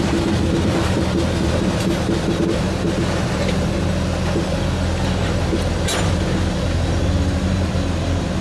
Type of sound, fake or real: real